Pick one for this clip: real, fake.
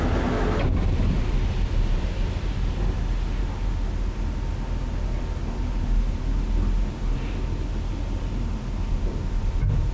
real